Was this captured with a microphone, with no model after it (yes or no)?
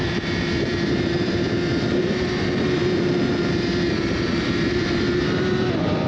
no